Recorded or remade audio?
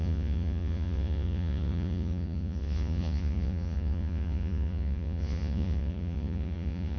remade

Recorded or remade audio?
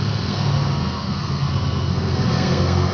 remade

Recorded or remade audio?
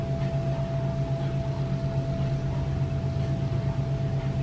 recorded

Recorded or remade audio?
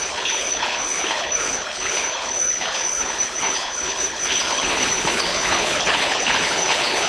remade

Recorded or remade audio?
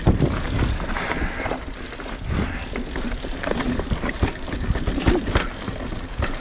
recorded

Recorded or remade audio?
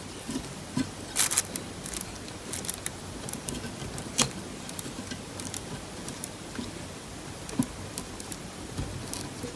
recorded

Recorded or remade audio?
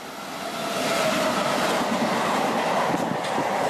recorded